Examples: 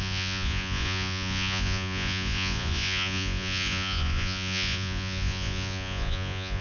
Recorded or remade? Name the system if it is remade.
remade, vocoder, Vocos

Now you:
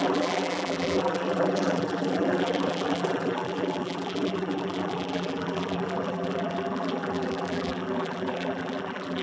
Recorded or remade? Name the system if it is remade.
remade, vocoder, BigVGAN v2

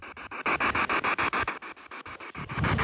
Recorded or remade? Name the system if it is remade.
recorded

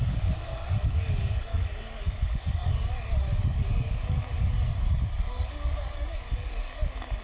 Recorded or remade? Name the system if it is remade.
remade, codec, DAC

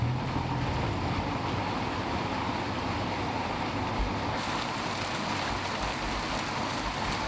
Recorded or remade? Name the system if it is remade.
recorded